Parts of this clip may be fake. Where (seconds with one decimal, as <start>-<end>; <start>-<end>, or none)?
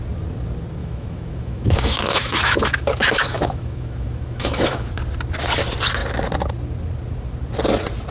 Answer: 0.8-4.9